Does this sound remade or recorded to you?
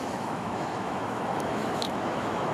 remade